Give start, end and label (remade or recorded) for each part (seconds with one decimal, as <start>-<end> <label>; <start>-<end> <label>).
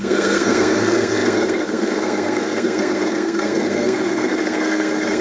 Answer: 0.0-5.2 remade